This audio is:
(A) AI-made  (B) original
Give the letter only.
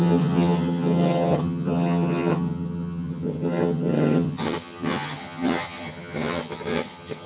A